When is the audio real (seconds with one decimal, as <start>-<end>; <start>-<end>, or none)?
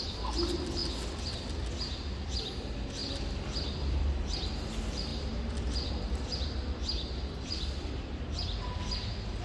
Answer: 0.0-3.0; 4.0-5.1; 5.9-9.4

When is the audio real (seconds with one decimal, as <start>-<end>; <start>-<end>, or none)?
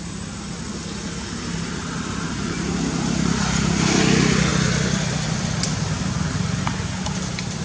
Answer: 0.0-7.6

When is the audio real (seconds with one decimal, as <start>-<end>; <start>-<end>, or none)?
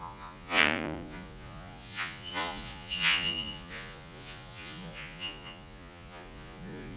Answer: none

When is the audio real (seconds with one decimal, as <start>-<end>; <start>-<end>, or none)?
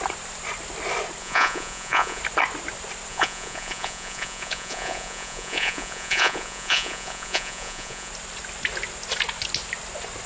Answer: 0.0-1.2; 2.2-3.1; 8.1-10.3